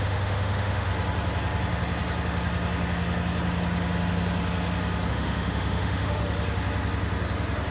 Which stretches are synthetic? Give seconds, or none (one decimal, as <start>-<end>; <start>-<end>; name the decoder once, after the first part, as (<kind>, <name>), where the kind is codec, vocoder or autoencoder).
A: 0.0-0.9 (autoencoder, DAC-VAE); 5.1-6.2